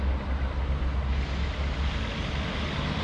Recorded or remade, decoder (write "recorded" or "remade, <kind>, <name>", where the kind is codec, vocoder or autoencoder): recorded